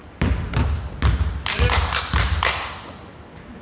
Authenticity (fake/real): real